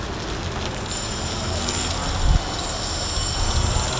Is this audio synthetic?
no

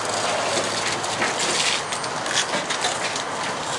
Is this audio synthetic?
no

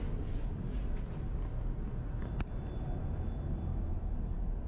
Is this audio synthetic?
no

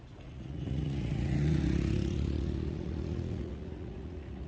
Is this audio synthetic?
yes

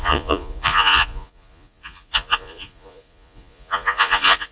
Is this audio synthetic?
yes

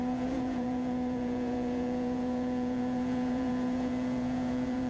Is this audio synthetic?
yes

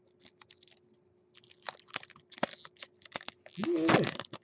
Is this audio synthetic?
no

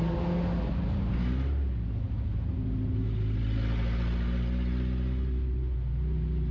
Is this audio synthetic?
no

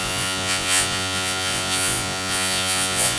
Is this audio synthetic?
yes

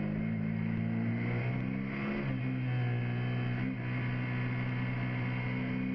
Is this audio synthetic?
no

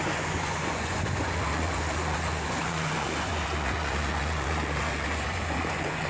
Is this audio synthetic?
yes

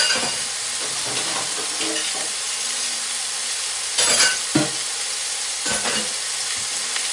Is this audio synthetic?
no